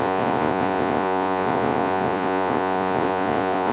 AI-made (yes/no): yes